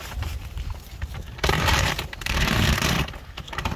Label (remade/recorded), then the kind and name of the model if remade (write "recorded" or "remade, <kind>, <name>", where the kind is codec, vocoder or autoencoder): remade, vocoder, BigVGAN v2